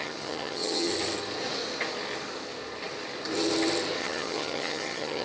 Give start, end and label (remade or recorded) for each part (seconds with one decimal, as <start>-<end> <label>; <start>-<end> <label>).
0.0-0.9 remade; 0.9-4.0 recorded; 4.0-5.2 remade